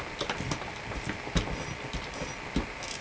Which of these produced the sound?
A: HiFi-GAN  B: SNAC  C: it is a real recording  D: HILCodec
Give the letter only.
C